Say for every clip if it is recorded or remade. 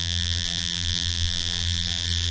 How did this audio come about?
remade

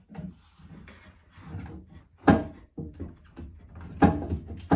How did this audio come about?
recorded